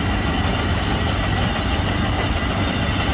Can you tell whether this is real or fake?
real